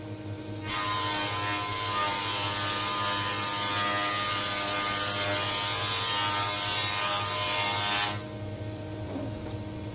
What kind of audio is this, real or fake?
real